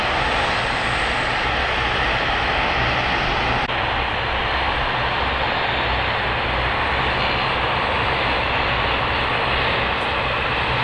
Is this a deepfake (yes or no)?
no